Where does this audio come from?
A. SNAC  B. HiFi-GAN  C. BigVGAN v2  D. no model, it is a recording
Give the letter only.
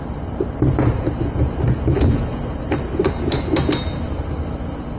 D